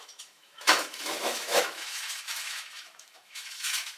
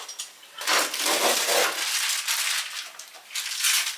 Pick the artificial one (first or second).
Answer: first